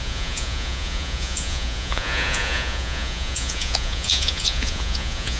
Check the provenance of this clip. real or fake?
fake